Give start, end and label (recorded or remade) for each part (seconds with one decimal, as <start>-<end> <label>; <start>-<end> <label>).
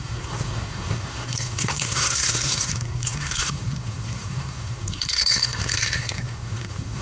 0.0-7.0 remade